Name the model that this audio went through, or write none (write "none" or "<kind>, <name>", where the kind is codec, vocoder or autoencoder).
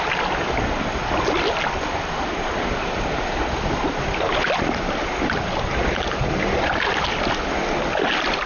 none